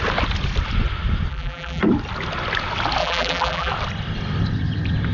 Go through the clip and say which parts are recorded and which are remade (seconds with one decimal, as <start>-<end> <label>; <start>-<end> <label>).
0.0-1.3 recorded; 1.3-1.8 remade; 1.8-3.0 recorded; 3.0-3.7 remade; 3.7-5.1 recorded